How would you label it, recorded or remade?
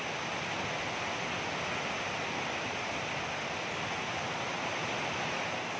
recorded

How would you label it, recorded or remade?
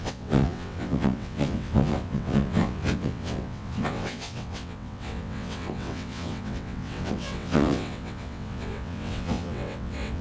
remade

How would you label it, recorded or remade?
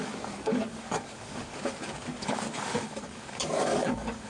remade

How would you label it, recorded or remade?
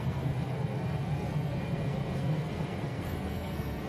remade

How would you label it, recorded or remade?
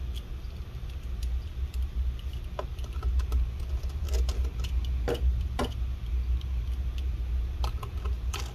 recorded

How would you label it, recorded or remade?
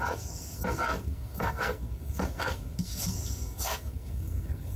remade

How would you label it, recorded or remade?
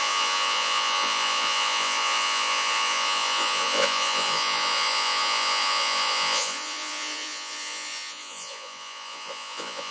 remade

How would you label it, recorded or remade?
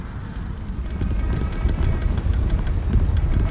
recorded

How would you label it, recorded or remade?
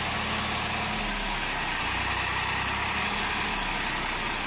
recorded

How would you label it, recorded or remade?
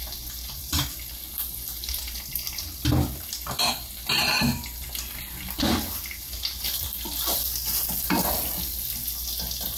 recorded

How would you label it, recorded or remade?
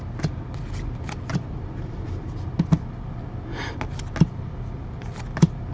recorded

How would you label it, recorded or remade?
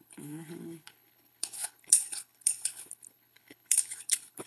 remade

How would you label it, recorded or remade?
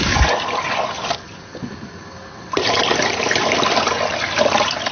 remade